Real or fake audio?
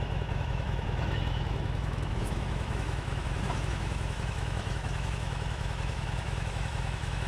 fake